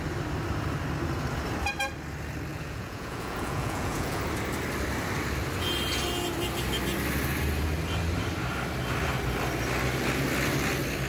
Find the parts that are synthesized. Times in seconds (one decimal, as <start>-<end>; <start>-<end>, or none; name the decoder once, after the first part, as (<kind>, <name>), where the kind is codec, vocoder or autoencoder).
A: 2.5-4.2 (vocoder, Vocos)